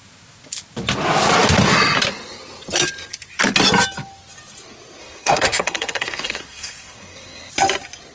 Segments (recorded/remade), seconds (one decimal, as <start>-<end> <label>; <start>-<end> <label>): 0.0-5.0 recorded; 5.0-7.5 remade; 7.5-8.1 recorded

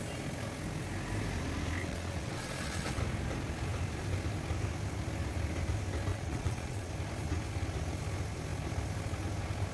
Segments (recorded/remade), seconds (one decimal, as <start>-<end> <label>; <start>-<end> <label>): 0.0-1.8 recorded; 1.8-3.0 remade; 3.0-6.1 recorded; 6.1-6.9 remade; 6.9-9.7 recorded

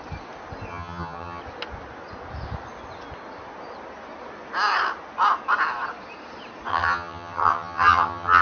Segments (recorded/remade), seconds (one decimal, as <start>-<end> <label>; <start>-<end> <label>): 0.0-0.7 recorded; 0.7-1.4 remade; 1.4-6.7 recorded; 6.7-8.4 remade

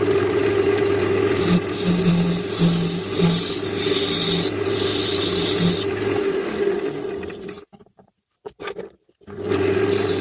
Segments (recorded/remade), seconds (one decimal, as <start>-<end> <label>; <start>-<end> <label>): 0.0-10.2 recorded

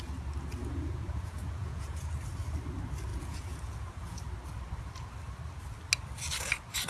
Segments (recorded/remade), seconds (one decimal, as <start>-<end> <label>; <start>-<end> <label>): 0.0-0.6 recorded; 0.6-2.1 remade; 2.1-3.1 recorded; 3.1-4.3 remade; 4.3-6.9 recorded